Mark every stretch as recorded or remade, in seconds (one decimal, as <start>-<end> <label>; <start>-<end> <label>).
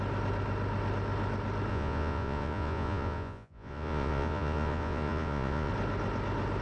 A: 0.0-1.7 recorded; 1.7-5.7 remade; 5.7-6.6 recorded